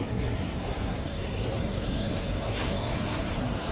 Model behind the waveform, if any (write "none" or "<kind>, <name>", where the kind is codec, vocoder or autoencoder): codec, SNAC